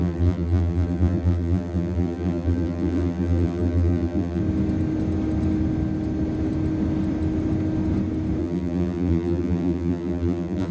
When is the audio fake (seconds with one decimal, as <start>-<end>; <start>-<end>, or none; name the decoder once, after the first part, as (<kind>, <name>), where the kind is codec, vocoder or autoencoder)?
0.0-4.4 (vocoder, BigVGAN v2); 8.4-10.7